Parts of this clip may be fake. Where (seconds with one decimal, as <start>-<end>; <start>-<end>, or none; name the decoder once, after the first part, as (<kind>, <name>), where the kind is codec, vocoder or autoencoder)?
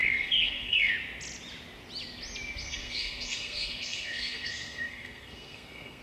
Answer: 0.0-0.9 (codec, SNAC); 2.6-6.0